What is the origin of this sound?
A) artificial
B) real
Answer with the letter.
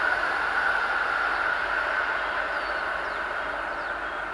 B